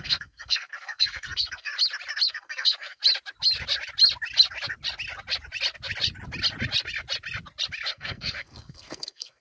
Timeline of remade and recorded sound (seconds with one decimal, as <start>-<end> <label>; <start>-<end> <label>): 0.0-1.7 remade; 1.7-2.3 recorded; 2.3-3.0 remade; 3.0-7.9 recorded; 7.9-9.4 remade